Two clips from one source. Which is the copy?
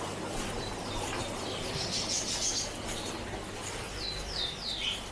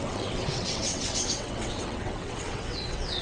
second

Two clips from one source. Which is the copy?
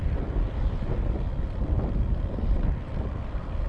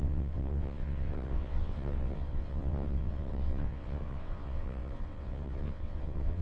second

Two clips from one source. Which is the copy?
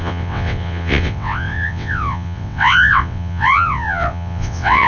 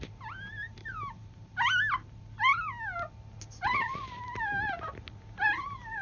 first